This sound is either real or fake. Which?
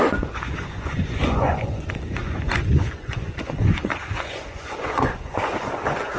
fake